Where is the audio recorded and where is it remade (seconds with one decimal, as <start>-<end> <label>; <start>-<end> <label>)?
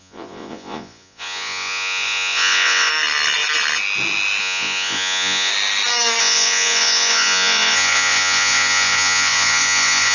0.0-2.9 remade; 2.9-4.4 recorded; 4.4-5.5 remade; 5.5-6.2 recorded; 6.2-10.1 remade